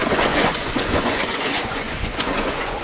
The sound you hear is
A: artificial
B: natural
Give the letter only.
A